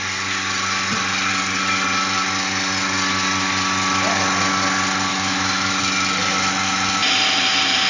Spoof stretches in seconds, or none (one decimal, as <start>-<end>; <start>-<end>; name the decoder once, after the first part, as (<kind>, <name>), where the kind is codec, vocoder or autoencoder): 5.1-5.8 (autoencoder, DAC-VAE)